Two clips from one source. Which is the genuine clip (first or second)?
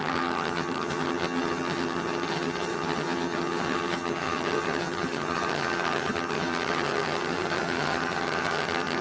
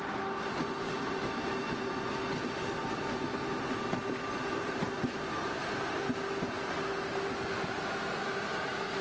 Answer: second